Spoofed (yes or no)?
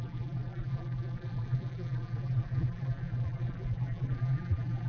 yes